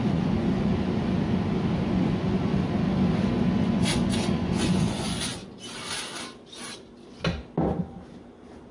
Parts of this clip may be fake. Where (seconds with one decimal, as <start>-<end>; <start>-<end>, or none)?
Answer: 0.0-0.7; 1.9-2.5; 3.6-5.4